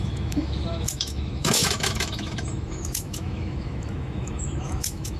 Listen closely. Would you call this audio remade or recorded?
remade